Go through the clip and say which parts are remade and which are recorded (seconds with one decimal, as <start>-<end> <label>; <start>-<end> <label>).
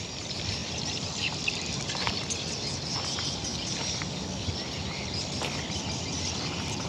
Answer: 0.0-0.6 recorded; 0.6-2.1 remade; 2.1-6.9 recorded